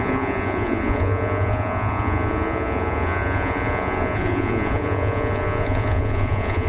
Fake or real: fake